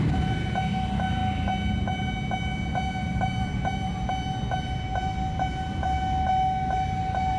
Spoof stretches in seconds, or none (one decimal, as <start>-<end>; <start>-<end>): 3.0-4.1